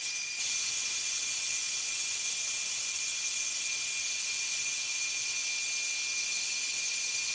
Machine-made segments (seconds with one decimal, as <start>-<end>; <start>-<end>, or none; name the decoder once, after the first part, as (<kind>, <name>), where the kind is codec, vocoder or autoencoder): 0.0-5.5 (vocoder, Vocos); 6.2-7.3